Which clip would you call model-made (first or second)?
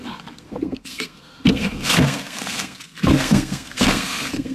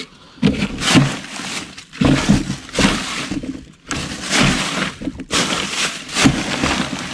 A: first